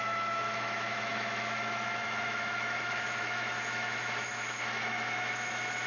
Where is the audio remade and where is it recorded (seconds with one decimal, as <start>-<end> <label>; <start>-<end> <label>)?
0.0-5.9 remade